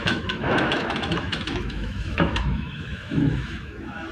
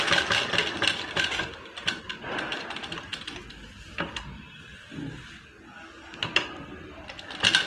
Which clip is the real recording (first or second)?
second